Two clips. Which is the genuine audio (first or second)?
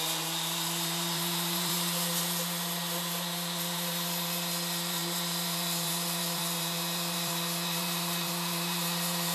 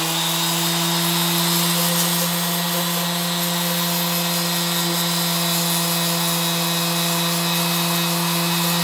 second